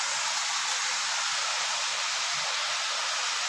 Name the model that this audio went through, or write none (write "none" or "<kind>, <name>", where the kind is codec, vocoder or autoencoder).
none